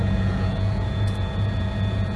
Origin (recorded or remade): remade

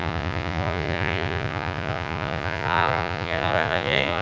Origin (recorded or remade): remade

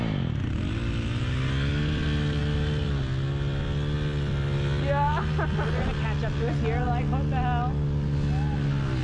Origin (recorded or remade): recorded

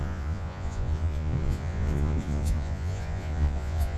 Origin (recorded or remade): remade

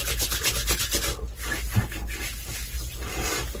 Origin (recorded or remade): recorded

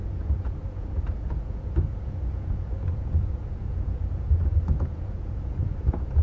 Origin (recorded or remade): remade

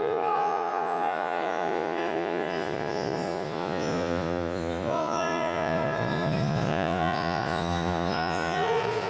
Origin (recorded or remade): remade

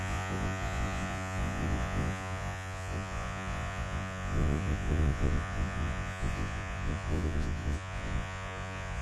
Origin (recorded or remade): remade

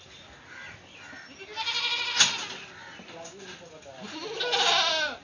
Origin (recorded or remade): recorded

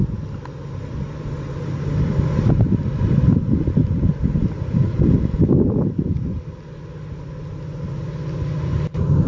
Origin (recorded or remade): recorded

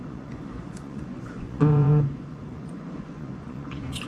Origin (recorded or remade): remade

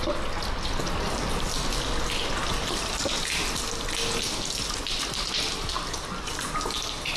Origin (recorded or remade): recorded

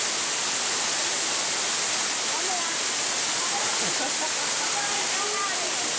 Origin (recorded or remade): recorded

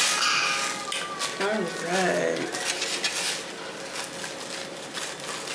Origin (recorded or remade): recorded